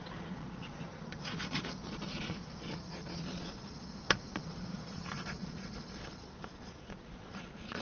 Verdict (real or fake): fake